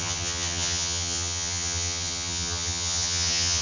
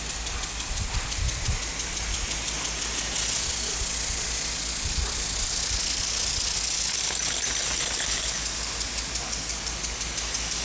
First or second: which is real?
second